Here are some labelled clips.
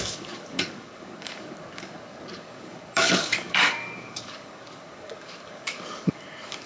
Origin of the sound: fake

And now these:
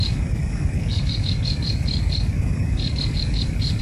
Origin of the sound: fake